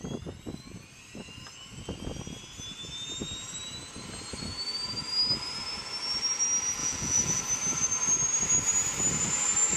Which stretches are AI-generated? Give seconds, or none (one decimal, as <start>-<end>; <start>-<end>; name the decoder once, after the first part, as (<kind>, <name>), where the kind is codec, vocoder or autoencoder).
6.8-7.4 (vocoder, Vocos)